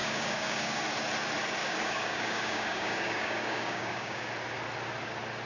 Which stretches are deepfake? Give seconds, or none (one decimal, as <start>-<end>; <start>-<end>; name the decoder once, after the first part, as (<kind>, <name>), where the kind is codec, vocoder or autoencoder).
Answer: 0.0-0.8 (codec, DAC); 1.6-4.3